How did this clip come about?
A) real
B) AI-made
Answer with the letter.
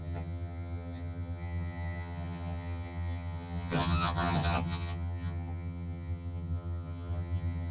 B